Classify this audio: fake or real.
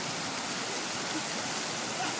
real